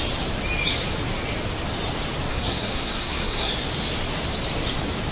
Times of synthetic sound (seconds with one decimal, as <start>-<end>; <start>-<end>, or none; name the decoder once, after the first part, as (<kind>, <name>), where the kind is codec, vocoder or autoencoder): 2.3-3.5 (codec, SNAC)